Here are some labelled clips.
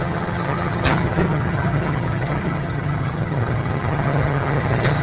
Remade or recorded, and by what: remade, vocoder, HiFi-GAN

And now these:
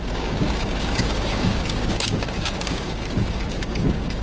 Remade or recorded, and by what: remade, codec, DAC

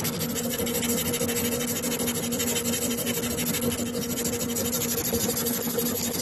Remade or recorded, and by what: recorded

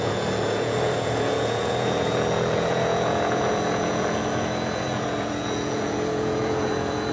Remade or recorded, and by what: remade, vocoder, Vocos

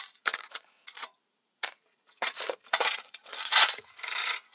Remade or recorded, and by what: remade, vocoder, Vocos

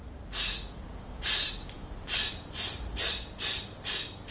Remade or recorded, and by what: recorded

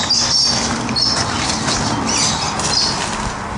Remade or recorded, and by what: recorded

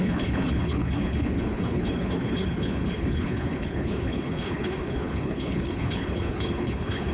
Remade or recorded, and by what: remade, codec, HILCodec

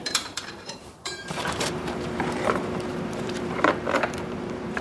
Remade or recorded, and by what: remade, vocoder, BigVGAN v2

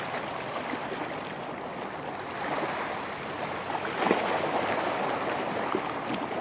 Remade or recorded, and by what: recorded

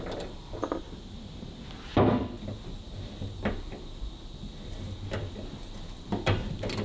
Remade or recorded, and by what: recorded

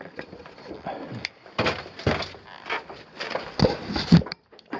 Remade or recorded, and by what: recorded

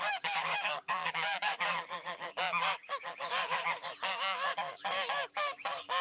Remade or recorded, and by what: remade, codec, DAC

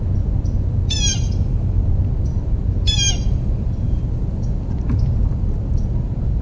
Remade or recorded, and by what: recorded